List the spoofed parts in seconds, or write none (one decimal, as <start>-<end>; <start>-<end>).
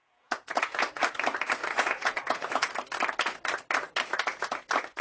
0.0-1.0; 1.6-2.7